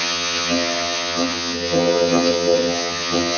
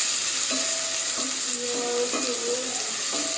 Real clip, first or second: second